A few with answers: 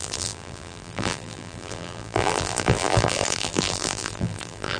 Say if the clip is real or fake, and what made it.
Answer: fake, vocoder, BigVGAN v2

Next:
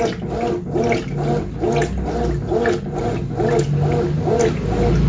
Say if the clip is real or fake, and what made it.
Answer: real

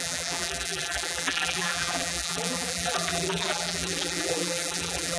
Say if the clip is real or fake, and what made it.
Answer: fake, vocoder, BigVGAN v2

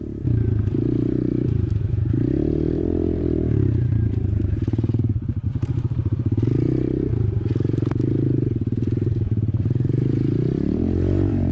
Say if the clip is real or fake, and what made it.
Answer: fake, vocoder, BigVGAN v2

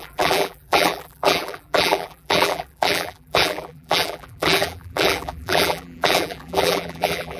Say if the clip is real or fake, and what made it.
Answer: fake, vocoder, BigVGAN v2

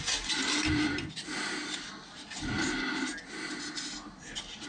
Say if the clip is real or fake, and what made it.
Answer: real